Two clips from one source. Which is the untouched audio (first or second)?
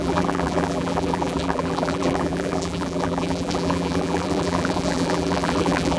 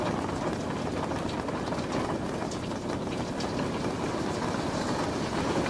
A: second